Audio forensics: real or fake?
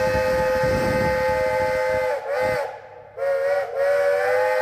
real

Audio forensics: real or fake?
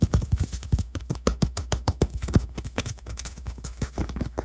fake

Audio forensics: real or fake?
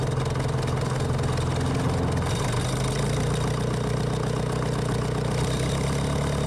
real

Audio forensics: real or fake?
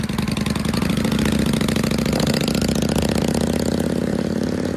real